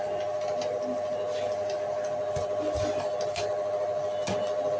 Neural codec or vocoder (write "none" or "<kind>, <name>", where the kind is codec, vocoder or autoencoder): none